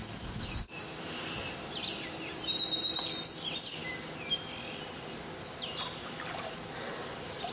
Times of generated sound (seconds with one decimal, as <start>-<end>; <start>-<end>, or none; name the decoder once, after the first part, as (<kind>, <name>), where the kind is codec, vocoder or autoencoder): 0.0-1.2 (autoencoder, DAC-VAE)